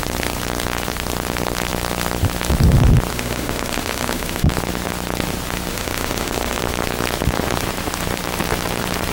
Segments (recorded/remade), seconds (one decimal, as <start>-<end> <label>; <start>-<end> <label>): 0.0-3.1 recorded; 3.1-4.5 remade; 4.5-5.7 recorded; 5.7-6.6 remade; 6.6-9.1 recorded